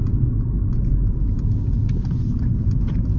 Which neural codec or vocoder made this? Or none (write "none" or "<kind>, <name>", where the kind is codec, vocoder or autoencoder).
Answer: none